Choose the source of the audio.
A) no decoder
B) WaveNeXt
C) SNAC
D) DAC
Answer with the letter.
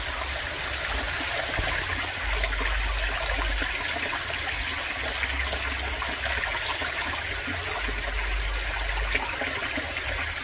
A